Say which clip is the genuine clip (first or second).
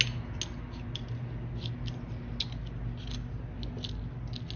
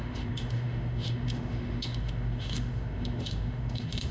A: first